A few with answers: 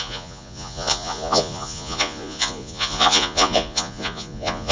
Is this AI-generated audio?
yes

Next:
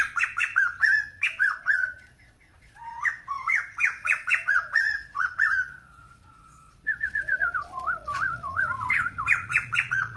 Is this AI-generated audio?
yes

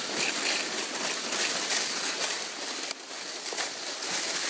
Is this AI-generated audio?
no